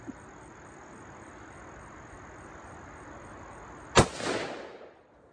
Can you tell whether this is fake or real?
real